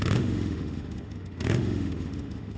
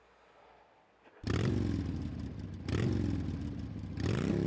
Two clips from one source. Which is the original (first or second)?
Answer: second